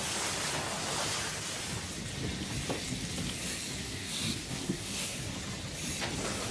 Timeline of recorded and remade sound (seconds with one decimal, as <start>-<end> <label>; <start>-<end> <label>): 0.0-3.8 recorded; 3.8-5.3 remade; 5.3-6.5 recorded